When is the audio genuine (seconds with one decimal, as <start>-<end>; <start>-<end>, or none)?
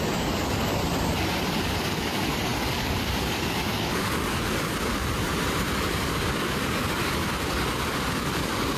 0.8-1.5; 5.0-5.9